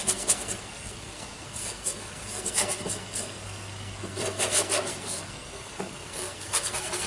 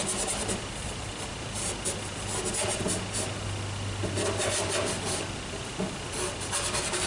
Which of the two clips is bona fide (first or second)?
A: second